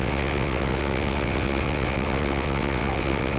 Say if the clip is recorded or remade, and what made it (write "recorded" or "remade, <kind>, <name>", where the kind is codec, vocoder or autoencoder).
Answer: remade, vocoder, WaveNeXt